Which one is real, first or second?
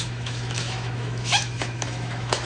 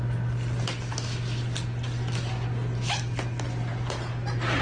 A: second